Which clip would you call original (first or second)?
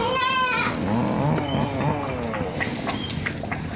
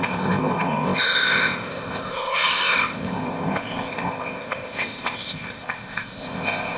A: first